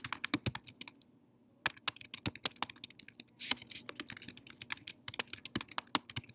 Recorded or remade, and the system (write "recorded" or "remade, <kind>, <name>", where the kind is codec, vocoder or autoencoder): recorded